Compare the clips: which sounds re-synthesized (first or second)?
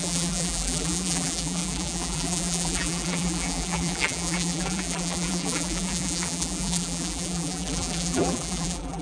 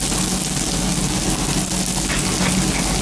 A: first